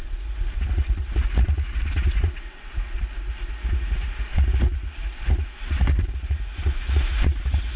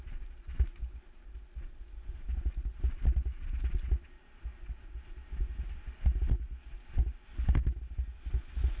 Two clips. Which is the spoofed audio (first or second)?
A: first